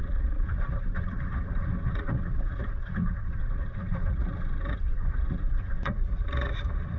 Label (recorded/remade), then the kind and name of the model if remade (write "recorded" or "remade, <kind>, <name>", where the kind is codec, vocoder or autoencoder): remade, vocoder, Vocos